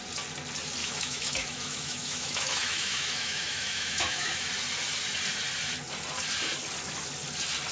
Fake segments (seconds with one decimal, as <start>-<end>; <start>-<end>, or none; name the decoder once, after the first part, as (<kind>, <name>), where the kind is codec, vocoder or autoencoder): 0.8-4.5 (autoencoder, DAC-VAE)